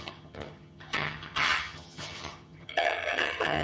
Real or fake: fake